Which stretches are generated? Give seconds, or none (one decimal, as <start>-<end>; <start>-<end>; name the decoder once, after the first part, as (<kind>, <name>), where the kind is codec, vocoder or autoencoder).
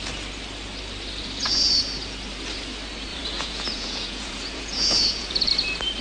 3.1-5.5 (vocoder, Vocos)